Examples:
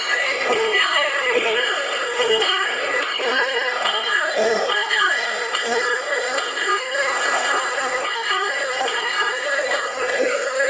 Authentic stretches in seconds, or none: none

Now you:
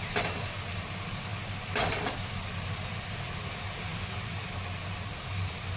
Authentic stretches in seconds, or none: 0.0-5.8

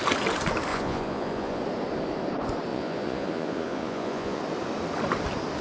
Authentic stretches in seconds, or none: 0.0-0.7; 1.6-2.7; 4.4-5.6

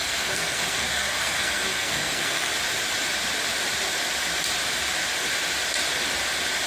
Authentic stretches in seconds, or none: 2.5-6.7

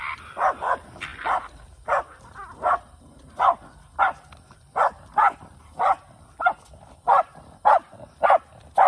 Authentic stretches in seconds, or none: 0.0-8.9

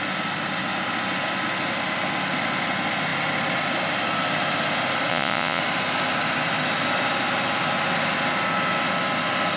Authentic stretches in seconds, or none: 0.0-5.1; 5.6-9.6